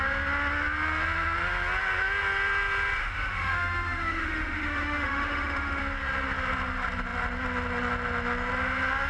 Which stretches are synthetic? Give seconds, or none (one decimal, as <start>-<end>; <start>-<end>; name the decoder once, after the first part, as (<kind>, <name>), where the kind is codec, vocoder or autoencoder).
3.0-5.8 (autoencoder, DAC-VAE)